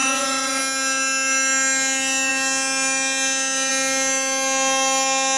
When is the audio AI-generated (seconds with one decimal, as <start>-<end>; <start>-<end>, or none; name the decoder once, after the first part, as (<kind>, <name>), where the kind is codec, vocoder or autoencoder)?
0.0-0.6 (vocoder, Vocos)